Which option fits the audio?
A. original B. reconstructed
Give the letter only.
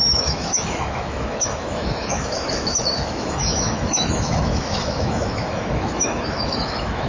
B